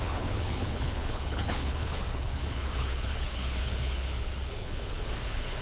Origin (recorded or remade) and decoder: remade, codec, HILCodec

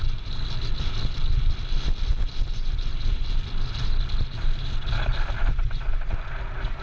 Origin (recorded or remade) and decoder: recorded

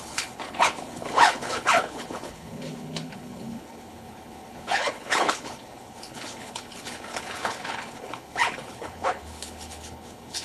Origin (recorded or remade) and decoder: remade, codec, HILCodec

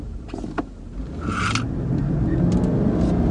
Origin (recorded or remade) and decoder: recorded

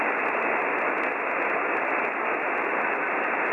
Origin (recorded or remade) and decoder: recorded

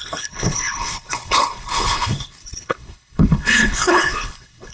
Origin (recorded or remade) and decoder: remade, codec, HILCodec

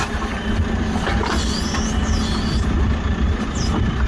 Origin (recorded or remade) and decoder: recorded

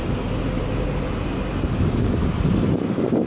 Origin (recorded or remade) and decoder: recorded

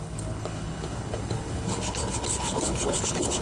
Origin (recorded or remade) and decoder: remade, codec, HILCodec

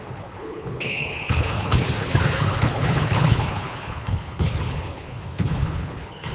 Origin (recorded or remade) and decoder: remade, codec, HILCodec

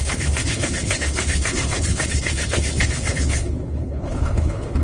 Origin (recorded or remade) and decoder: remade, codec, HILCodec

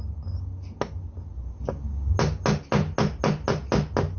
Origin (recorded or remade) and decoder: recorded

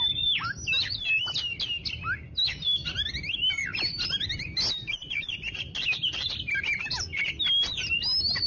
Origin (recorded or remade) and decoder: recorded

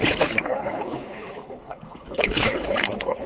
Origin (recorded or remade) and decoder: remade, codec, HILCodec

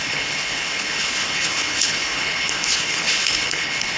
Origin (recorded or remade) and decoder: remade, codec, HILCodec